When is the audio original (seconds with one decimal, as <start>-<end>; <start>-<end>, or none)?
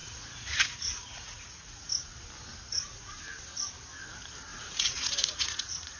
1.9-2.7; 3.2-4.5